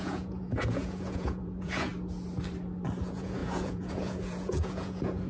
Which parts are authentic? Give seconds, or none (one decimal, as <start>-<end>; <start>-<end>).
1.9-3.0